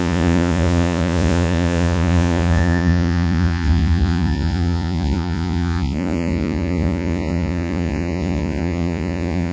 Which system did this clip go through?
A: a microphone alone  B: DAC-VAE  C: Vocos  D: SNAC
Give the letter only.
C